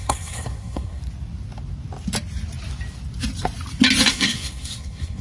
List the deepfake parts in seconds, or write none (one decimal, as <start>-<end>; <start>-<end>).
0.0-1.0; 4.1-5.2